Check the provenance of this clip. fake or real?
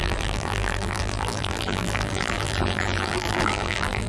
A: fake